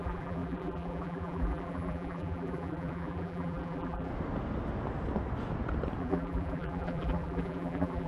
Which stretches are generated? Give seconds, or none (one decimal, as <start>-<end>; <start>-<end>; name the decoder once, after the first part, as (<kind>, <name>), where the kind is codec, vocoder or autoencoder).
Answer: 0.0-4.1 (vocoder, BigVGAN v2); 6.0-8.1